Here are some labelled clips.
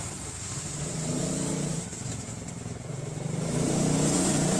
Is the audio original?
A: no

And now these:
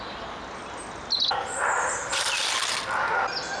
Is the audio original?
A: yes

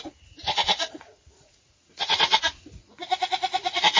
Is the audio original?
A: no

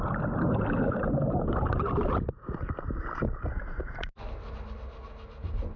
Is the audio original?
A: yes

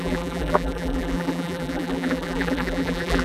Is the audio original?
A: no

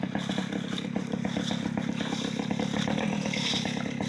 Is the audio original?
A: yes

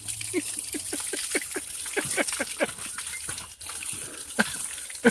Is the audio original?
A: yes